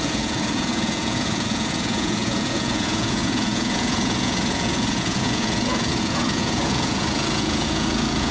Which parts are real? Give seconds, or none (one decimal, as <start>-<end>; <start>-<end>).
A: none